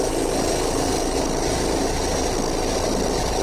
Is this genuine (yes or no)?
yes